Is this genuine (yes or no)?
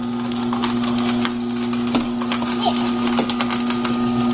yes